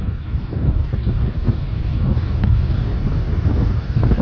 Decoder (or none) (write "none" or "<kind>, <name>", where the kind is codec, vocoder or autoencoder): codec, DAC